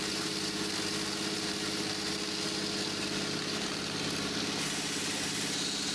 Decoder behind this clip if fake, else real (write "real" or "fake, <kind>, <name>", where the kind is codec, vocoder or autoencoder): real